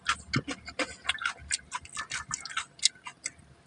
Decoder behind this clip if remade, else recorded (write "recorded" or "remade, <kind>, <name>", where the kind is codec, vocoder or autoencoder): recorded